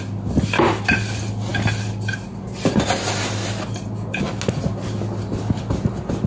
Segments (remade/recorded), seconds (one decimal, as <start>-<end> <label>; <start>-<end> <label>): 0.0-6.3 recorded